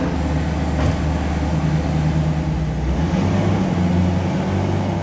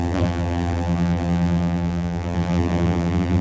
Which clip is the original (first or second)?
first